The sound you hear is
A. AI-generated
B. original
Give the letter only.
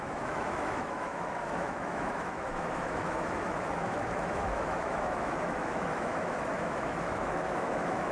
A